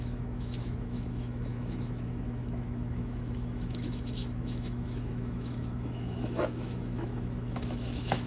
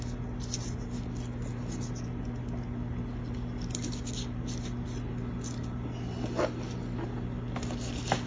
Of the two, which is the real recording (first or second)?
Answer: second